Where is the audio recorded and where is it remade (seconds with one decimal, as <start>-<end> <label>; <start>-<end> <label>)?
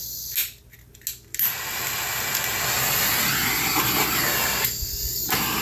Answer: 0.0-5.6 recorded